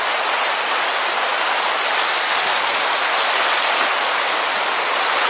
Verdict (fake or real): real